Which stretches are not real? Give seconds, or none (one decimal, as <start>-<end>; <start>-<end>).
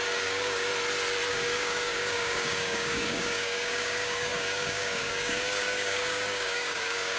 0.0-0.7; 1.3-7.2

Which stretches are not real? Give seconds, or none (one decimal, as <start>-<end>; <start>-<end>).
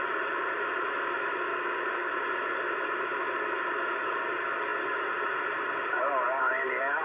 1.5-2.1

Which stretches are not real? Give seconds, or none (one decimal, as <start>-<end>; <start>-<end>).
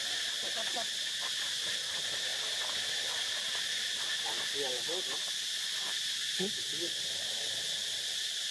none